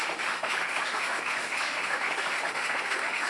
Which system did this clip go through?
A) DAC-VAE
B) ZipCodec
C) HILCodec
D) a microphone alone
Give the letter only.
A